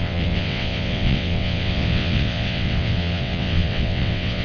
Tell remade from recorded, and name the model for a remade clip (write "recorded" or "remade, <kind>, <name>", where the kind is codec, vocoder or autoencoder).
remade, vocoder, WaveNeXt